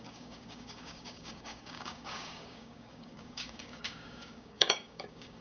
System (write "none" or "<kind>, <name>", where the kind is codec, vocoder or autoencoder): codec, DAC